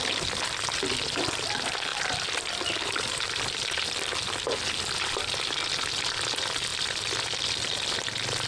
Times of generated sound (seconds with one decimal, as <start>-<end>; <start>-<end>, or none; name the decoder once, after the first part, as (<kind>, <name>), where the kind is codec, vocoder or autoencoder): 1.9-3.0 (vocoder, BigVGAN v2); 6.7-7.5